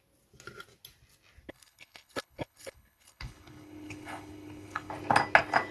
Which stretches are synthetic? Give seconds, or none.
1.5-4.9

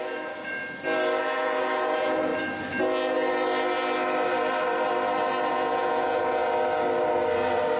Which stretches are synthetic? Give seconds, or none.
0.0-0.6; 1.2-2.3; 5.5-6.4

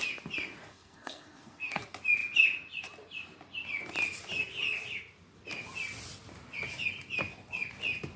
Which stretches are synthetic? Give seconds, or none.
0.7-1.8

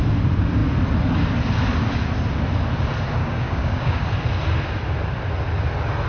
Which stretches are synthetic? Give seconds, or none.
3.2-4.0

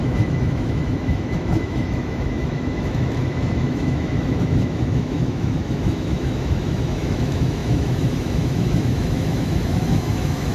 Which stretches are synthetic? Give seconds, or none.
0.0-10.5

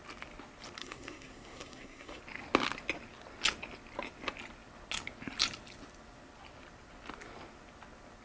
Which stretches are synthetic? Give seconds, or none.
0.8-2.2